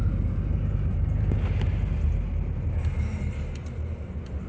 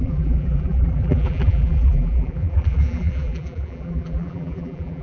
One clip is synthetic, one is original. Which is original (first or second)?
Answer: first